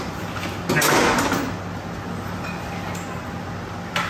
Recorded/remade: recorded